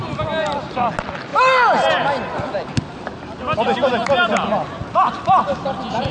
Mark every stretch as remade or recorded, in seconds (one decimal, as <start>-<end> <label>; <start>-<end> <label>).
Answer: 0.0-6.1 recorded